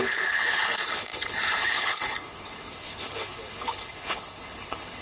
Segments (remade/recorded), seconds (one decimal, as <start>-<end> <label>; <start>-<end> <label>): 0.0-5.0 remade